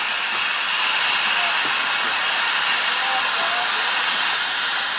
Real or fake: real